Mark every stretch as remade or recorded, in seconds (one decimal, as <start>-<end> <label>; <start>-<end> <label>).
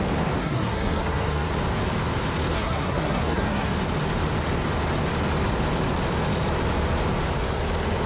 0.0-0.4 recorded; 0.4-1.5 remade; 1.5-2.5 recorded; 2.5-3.7 remade; 3.7-8.1 recorded